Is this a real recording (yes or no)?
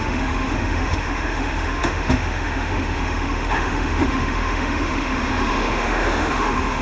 no